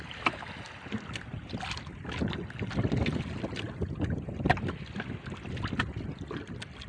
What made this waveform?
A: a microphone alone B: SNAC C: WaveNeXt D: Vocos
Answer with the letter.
A